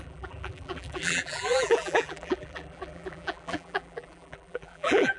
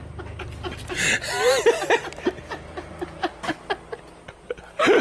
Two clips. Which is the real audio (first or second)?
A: second